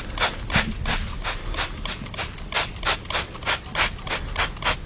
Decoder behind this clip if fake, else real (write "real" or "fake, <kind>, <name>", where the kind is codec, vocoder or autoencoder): real